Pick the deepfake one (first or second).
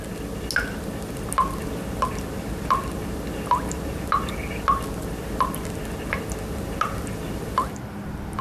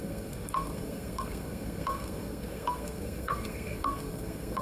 second